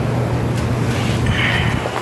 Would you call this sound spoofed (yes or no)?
no